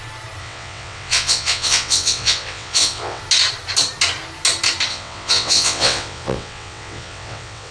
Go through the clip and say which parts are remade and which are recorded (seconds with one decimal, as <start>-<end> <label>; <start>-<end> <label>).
0.0-0.4 recorded; 0.4-3.2 remade; 3.2-4.9 recorded; 4.9-7.7 remade